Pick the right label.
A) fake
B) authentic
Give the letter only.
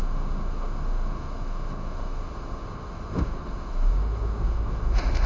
A